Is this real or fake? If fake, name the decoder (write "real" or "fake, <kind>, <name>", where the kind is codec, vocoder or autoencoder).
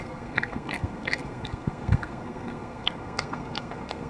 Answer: fake, codec, SNAC